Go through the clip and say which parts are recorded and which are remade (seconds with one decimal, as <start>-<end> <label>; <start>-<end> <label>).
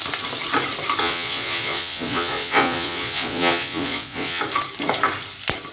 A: 0.0-1.0 recorded; 1.0-4.4 remade; 4.4-5.7 recorded